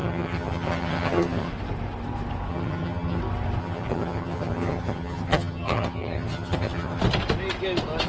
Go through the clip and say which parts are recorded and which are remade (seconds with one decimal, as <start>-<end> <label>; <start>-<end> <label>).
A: 0.0-1.5 remade; 1.5-2.5 recorded; 2.5-3.2 remade; 3.2-3.6 recorded; 3.6-7.0 remade; 7.0-8.1 recorded